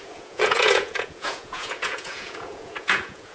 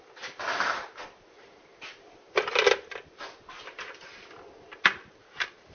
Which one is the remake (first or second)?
first